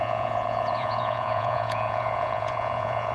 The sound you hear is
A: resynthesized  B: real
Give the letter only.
A